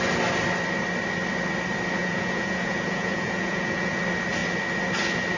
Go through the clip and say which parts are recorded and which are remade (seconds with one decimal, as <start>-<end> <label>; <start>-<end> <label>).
0.0-2.0 recorded; 2.0-4.0 remade; 4.0-5.4 recorded

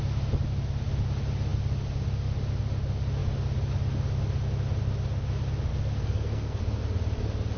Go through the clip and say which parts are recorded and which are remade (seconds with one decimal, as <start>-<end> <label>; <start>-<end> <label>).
0.0-5.7 recorded; 5.7-6.6 remade; 6.6-7.6 recorded

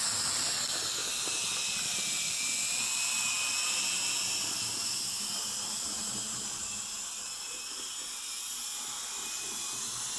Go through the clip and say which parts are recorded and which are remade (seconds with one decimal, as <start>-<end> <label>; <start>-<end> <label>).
0.0-5.9 recorded; 5.9-6.8 remade; 6.8-10.2 recorded